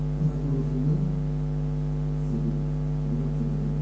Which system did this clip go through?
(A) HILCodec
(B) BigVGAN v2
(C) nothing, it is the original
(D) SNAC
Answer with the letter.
C